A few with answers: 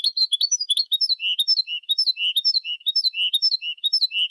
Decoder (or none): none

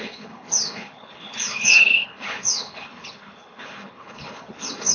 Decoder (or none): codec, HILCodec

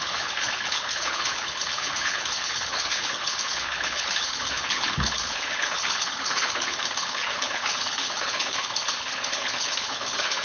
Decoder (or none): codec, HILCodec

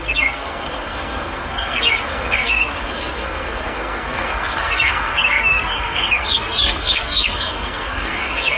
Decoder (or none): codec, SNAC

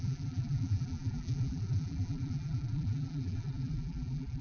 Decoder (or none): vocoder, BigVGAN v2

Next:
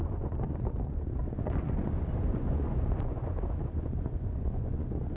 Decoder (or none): vocoder, Vocos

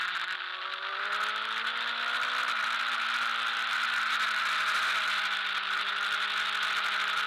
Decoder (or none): none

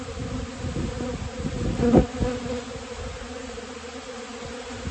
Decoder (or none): none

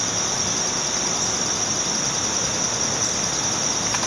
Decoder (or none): none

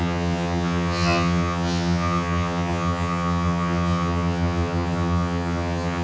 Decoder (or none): vocoder, HiFi-GAN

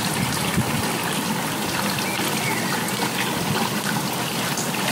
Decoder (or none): none